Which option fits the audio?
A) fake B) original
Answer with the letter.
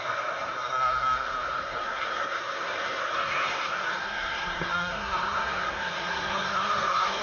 A